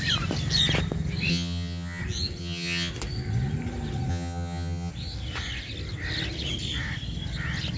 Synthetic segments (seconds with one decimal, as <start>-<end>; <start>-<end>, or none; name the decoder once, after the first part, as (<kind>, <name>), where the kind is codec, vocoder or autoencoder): 1.3-2.0 (vocoder, HiFi-GAN); 2.4-2.9; 4.1-4.9